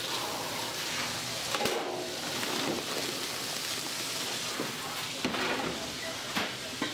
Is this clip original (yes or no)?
yes